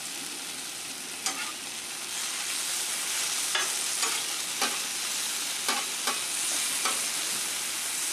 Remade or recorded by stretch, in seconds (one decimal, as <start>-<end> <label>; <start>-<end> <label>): 0.0-8.1 recorded